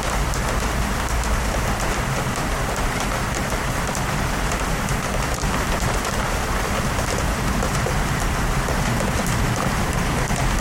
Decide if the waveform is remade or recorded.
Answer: recorded